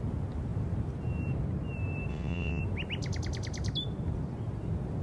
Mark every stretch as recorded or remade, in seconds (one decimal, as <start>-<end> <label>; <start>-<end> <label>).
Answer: 0.0-2.1 recorded; 2.1-2.6 remade; 2.6-5.0 recorded